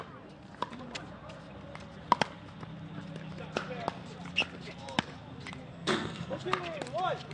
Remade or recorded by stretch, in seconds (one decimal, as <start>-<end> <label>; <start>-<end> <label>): 0.0-5.7 recorded; 5.7-6.4 remade; 6.4-7.3 recorded